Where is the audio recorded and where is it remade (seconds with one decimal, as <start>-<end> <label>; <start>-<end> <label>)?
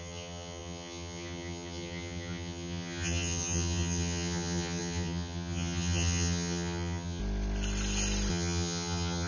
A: 0.0-7.2 remade; 7.2-8.3 recorded; 8.3-9.3 remade